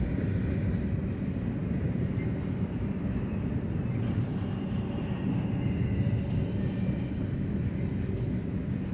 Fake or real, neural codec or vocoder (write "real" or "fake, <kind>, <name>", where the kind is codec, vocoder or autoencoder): real